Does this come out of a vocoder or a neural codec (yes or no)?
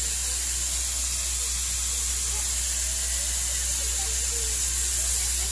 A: no